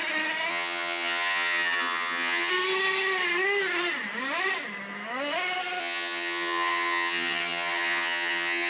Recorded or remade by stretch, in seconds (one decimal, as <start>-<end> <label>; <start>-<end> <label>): 0.0-0.5 recorded; 0.5-2.5 remade; 2.5-5.8 recorded; 5.8-8.7 remade